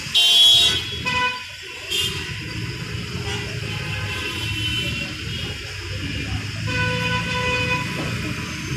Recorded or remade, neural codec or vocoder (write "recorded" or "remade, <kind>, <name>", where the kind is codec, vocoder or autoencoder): recorded